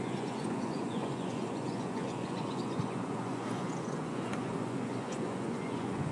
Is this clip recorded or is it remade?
remade